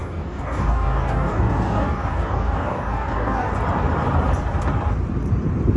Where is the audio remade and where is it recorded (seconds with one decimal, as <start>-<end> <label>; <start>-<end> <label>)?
0.0-3.5 remade; 3.5-5.8 recorded